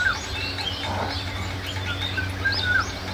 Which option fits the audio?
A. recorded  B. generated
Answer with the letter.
A